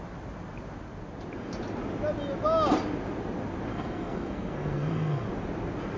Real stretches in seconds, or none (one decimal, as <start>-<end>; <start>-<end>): 0.0-3.7; 5.3-6.0